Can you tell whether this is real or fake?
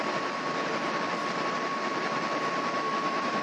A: fake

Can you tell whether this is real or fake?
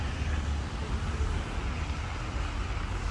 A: real